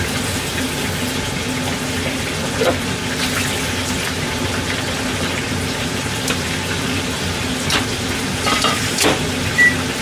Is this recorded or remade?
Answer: recorded